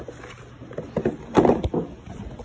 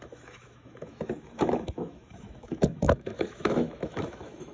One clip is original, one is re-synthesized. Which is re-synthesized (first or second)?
second